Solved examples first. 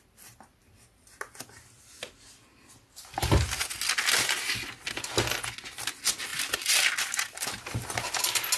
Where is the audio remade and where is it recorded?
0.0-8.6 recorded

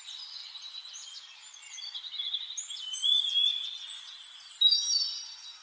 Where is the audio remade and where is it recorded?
0.0-5.6 recorded